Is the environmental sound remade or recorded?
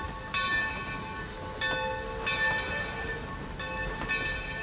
recorded